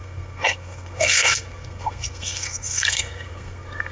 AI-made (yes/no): yes